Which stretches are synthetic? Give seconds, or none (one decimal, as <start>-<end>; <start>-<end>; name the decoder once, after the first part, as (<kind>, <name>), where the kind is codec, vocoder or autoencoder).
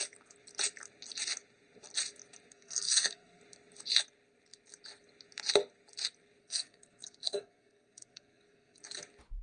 2.5-3.4 (codec, SNAC); 6.4-8.8